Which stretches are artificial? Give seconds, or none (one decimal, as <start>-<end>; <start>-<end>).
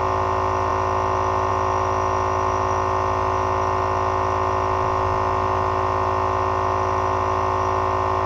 none